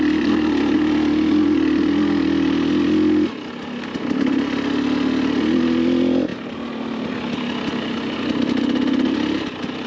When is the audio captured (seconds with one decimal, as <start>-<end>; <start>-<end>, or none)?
0.0-9.9